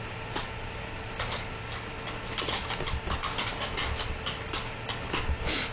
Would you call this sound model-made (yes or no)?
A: no